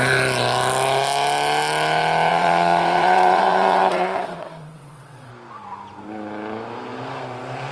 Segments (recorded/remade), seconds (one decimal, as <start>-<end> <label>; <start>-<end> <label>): 0.0-2.3 recorded; 2.3-5.3 remade; 5.3-7.7 recorded